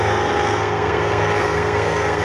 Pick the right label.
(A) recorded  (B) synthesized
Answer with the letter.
B